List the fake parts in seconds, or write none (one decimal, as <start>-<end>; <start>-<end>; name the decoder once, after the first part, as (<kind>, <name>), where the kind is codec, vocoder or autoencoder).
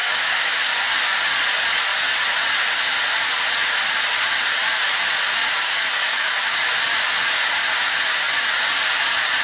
0.0-0.6 (autoencoder, DAC-VAE); 5.5-6.6